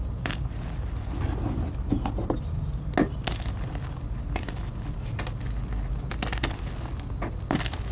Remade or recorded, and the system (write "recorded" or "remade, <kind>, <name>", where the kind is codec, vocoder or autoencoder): recorded